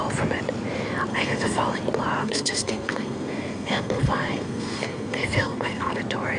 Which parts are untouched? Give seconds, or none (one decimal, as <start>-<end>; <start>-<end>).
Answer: 0.0-1.1; 1.6-2.2; 6.0-6.4